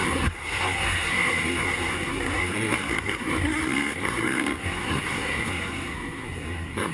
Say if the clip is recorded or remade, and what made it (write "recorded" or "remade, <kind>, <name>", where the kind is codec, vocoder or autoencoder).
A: remade, codec, SNAC